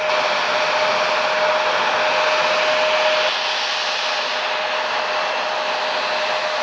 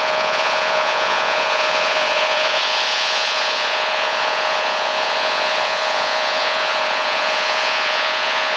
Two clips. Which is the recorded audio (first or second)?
first